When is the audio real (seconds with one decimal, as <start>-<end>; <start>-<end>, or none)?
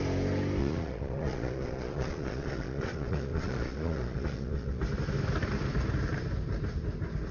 0.0-0.6; 4.8-7.3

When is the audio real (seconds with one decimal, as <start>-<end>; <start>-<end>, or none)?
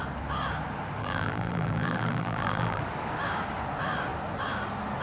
0.0-1.0; 2.8-5.0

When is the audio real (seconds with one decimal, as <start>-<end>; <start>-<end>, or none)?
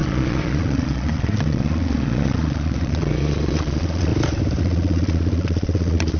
4.1-4.6